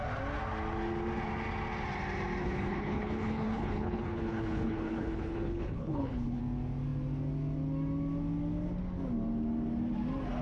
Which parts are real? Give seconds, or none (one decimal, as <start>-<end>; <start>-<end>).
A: 0.0-2.4; 6.4-10.4